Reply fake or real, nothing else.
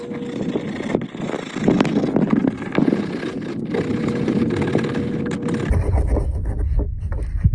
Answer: real